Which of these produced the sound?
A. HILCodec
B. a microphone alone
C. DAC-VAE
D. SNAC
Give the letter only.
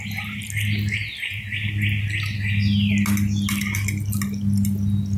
B